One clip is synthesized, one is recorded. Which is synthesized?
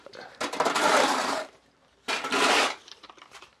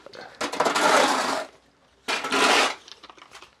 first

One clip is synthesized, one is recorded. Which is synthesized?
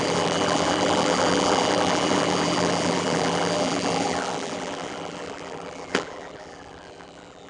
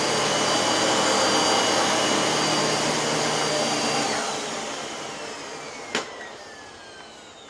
first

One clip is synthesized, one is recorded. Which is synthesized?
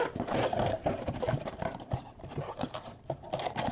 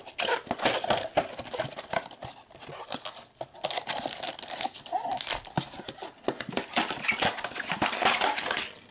first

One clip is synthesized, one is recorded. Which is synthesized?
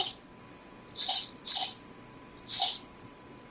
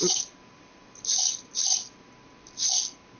second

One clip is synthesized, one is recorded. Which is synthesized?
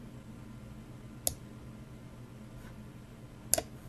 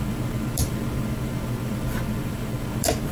second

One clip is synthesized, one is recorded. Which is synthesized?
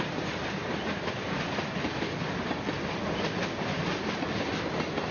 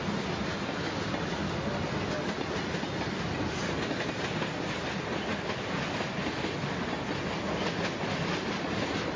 first